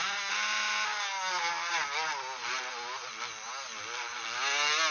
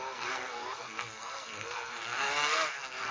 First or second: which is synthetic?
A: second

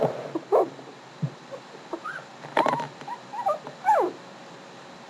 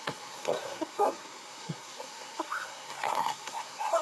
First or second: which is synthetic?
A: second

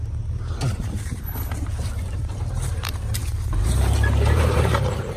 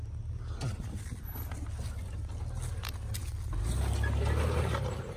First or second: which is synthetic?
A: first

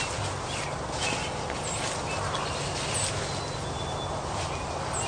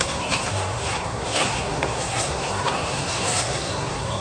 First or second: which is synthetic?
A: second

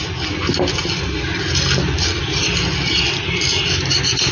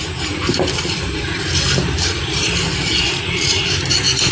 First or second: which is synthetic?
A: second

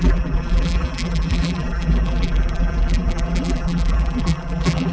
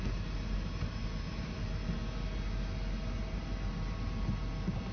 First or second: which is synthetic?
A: first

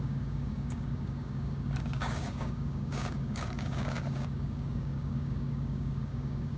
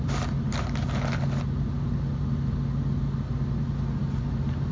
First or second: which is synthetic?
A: first